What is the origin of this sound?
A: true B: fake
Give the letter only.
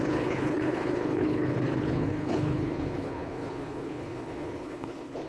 B